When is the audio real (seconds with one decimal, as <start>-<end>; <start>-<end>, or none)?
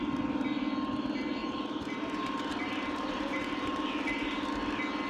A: 0.0-1.4; 4.5-5.1